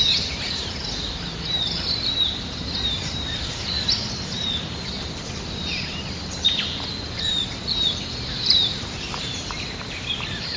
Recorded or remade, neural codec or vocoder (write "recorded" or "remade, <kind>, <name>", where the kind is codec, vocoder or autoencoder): remade, vocoder, BigVGAN v2